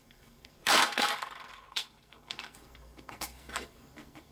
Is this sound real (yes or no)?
no